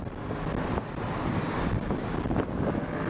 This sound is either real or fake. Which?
real